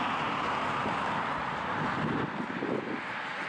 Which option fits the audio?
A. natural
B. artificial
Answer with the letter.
A